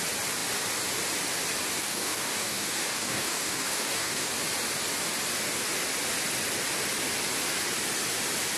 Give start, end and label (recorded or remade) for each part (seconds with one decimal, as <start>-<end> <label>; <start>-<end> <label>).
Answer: 0.0-1.8 recorded; 1.8-4.3 remade; 4.3-8.6 recorded